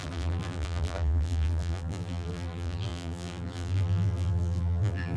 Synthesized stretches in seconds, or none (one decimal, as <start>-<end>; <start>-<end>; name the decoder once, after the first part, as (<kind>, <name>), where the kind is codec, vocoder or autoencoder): 0.0-5.2 (vocoder, BigVGAN v2)